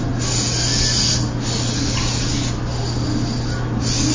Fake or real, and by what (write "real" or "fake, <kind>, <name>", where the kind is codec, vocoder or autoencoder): real